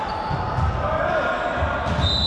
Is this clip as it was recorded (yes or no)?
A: yes